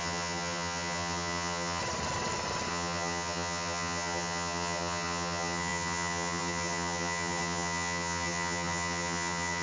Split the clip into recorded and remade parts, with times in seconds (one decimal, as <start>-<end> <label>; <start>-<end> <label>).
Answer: 0.0-1.8 remade; 1.8-2.7 recorded; 2.7-9.6 remade